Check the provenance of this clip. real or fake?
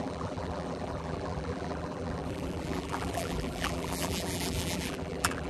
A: fake